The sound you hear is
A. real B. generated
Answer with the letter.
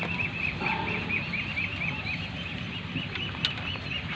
A